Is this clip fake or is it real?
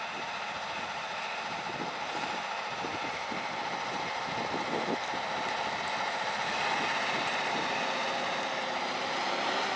real